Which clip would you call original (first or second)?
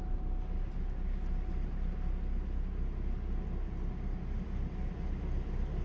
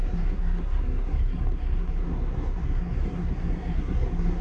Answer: first